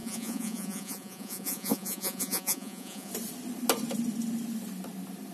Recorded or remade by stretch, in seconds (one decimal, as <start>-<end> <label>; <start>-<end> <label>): 0.0-3.1 remade; 3.1-5.3 recorded